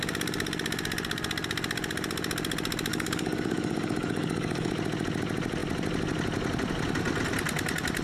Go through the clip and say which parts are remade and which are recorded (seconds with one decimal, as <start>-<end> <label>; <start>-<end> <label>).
0.0-2.9 recorded; 2.9-4.7 remade; 4.7-8.0 recorded